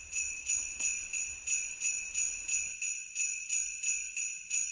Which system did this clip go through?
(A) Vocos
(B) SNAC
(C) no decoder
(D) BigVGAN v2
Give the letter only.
C